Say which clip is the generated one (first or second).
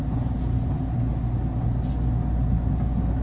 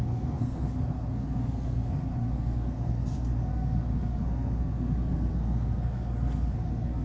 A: second